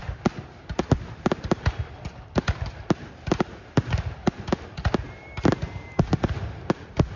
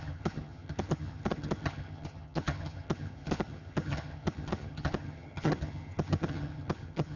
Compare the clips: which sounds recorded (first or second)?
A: first